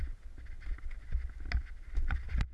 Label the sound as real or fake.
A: real